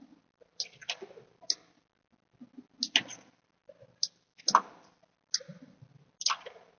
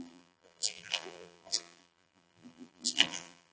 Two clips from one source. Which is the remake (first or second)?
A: second